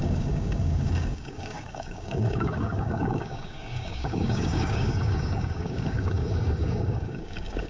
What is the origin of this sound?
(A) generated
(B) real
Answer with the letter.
A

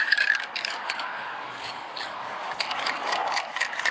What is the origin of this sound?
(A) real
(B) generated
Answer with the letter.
B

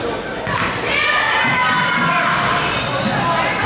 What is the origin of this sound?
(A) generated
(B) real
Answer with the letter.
B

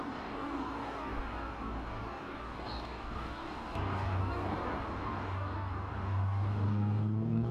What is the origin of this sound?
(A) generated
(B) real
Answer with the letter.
A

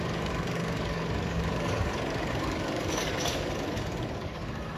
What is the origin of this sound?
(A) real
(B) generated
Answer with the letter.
B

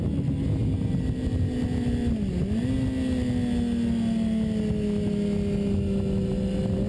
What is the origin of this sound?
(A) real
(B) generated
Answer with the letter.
A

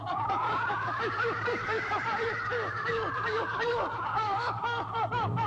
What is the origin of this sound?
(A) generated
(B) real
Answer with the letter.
A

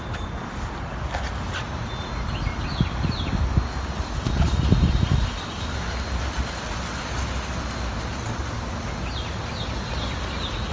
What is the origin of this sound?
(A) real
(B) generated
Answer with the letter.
A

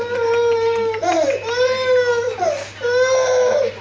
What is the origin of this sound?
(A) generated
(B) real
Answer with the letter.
B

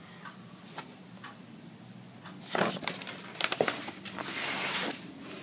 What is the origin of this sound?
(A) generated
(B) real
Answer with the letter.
B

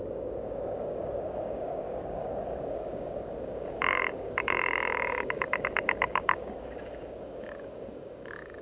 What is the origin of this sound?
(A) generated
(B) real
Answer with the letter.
A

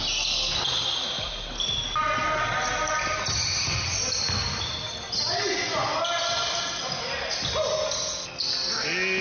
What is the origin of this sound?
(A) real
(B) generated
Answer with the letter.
A